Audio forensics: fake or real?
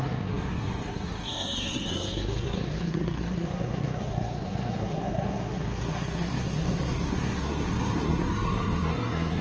fake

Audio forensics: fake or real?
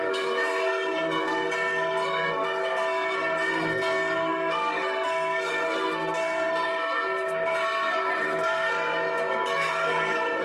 fake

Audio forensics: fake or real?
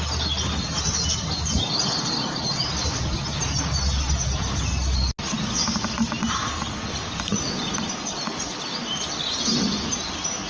real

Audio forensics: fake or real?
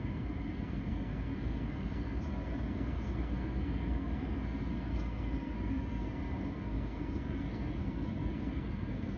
fake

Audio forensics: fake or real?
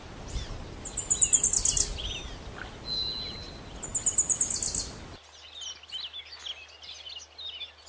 real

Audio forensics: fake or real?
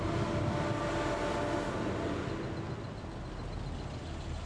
real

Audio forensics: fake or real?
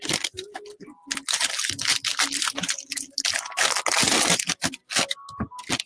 real